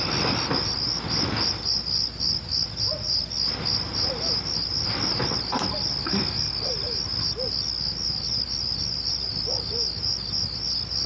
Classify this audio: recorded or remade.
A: recorded